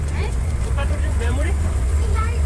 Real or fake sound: fake